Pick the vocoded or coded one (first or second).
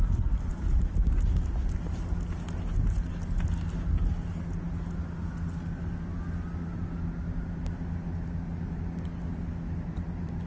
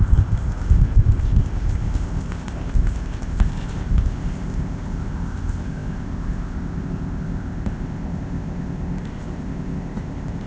second